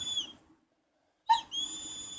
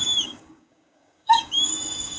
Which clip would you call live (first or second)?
first